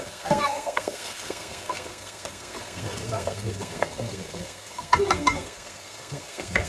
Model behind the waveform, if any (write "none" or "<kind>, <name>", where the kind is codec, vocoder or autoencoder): codec, SNAC